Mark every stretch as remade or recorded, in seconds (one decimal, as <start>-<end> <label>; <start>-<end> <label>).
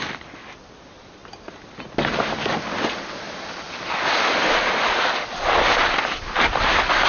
0.0-7.1 recorded